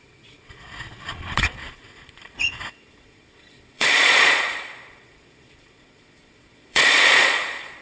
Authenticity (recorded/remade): remade